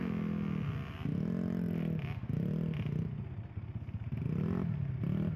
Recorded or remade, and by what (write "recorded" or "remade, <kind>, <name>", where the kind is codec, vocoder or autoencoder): recorded